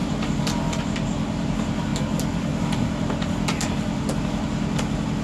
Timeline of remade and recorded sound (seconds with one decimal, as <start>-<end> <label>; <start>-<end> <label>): 0.0-5.2 recorded